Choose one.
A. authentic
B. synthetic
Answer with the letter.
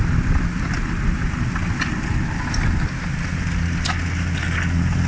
A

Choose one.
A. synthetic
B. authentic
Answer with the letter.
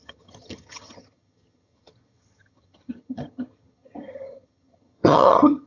A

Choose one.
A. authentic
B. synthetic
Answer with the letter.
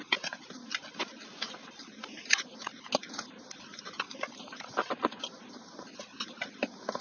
A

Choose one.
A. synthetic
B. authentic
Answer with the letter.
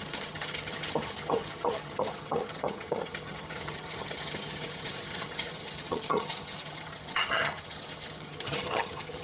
A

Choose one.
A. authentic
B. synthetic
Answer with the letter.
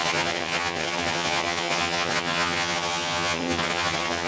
B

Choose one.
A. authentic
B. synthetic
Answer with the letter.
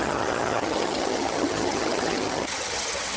B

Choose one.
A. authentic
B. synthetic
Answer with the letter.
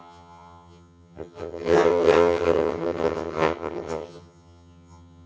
B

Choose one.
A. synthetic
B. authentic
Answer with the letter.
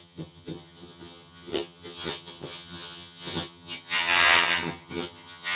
A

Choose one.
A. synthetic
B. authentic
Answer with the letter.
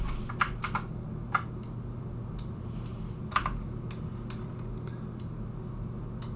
B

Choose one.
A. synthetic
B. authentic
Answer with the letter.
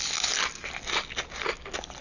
B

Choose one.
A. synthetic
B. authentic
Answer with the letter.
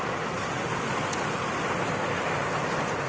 B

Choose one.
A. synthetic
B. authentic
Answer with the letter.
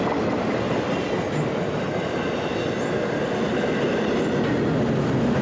B